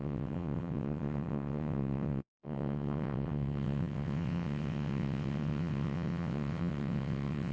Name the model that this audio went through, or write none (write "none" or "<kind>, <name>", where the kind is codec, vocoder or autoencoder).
vocoder, WaveNeXt